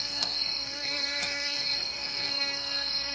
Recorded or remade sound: remade